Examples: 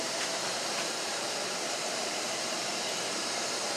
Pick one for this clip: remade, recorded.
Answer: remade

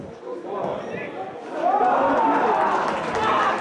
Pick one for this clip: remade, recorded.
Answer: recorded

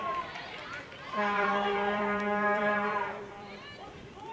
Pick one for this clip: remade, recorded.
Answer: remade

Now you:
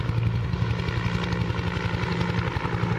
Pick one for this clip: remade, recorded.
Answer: recorded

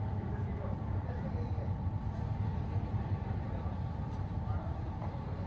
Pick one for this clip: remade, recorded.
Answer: remade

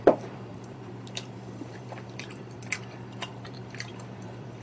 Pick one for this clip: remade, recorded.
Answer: remade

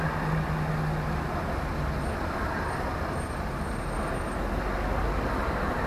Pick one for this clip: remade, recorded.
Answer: recorded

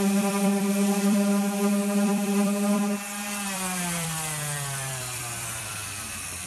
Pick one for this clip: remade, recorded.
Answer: remade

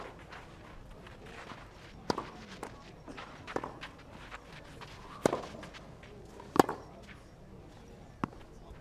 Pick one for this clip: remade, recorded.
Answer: recorded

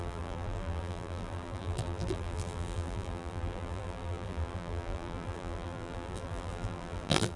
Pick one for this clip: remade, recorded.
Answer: remade